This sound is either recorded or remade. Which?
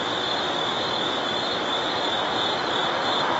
recorded